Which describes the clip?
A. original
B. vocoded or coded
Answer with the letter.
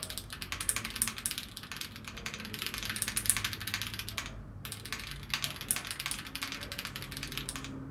A